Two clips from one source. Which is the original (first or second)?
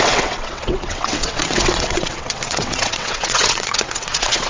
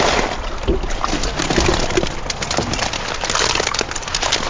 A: second